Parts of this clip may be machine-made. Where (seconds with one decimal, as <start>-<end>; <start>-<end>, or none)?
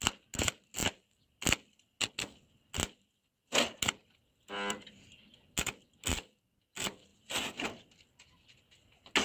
none